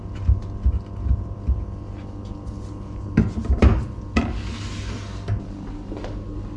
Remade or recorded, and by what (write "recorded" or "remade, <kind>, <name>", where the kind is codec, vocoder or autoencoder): recorded